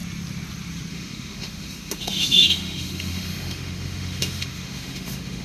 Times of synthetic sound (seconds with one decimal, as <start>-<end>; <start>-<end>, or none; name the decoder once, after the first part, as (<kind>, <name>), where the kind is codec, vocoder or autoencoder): 0.9-5.4 (autoencoder, DAC-VAE)